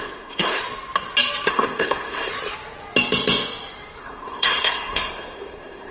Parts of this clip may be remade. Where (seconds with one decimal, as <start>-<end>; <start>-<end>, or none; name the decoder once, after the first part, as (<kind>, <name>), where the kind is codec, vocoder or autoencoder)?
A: 0.0-0.6 (codec, SNAC); 1.5-2.3; 4.0-5.9